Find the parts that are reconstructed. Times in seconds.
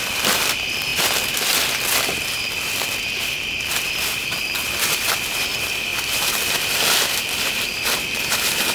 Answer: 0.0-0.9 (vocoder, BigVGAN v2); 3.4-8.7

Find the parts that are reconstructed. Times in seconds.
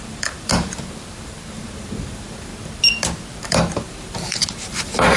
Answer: 0.0-2.5 (vocoder, BigVGAN v2); 3.3-5.2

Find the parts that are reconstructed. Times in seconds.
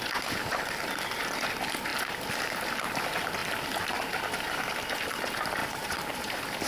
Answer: 5.6-6.7 (vocoder, BigVGAN v2)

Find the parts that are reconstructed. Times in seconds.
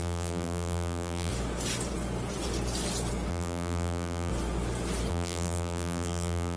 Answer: 0.0-1.3 (vocoder, BigVGAN v2); 3.3-4.3; 5.1-6.6